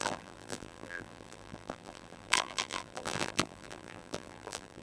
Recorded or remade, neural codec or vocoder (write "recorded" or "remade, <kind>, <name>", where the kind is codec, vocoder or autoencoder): remade, vocoder, BigVGAN v2